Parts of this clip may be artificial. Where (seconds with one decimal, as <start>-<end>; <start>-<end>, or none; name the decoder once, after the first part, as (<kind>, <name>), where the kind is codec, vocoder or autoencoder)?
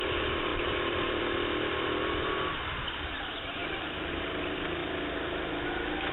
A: 0.0-4.8 (vocoder, BigVGAN v2)